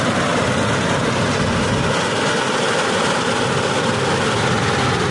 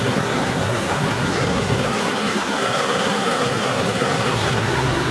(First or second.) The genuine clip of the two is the first